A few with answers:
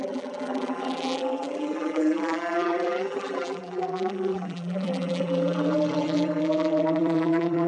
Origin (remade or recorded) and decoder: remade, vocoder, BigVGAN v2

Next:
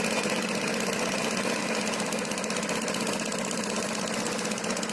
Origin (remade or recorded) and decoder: recorded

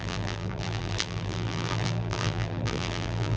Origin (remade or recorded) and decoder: remade, vocoder, BigVGAN v2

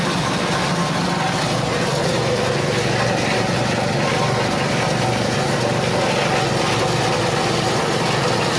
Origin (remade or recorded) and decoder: recorded